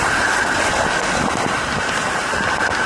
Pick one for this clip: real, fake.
fake